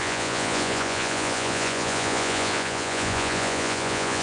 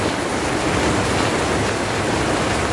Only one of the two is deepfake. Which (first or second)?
first